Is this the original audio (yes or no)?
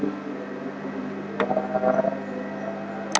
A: yes